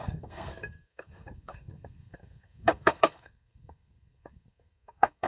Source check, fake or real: fake